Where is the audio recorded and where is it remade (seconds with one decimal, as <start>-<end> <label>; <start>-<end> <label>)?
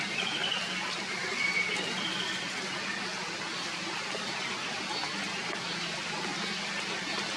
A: 0.0-7.4 recorded